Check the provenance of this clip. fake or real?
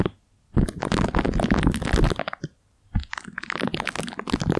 real